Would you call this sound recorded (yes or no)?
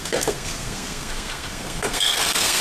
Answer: no